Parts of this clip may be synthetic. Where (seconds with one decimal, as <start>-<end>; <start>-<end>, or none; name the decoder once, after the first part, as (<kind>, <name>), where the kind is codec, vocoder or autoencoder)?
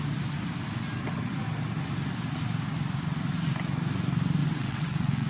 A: 4.4-5.3 (vocoder, WaveNeXt)